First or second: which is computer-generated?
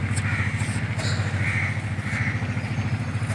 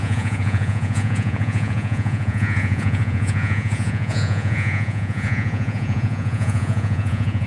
second